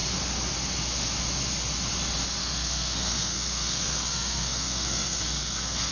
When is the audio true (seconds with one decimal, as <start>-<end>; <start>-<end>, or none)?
0.0-2.4